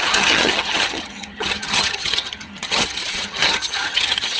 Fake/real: fake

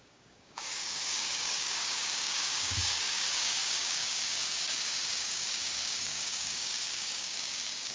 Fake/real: fake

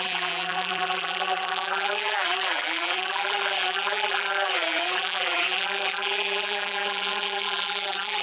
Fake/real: fake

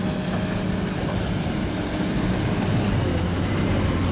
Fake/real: real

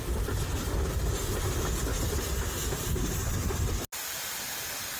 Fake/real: real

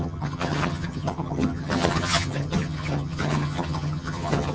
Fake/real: fake